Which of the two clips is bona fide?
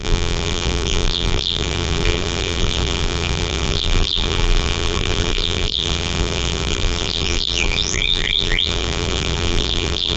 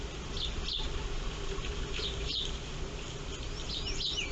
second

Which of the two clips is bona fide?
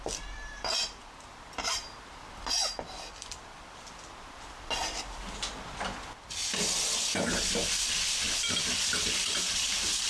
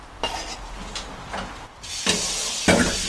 second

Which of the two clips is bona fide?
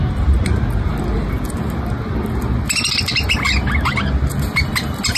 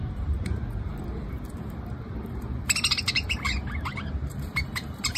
first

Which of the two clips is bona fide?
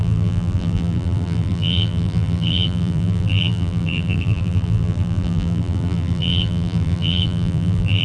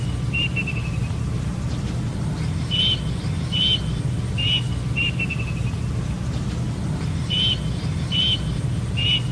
second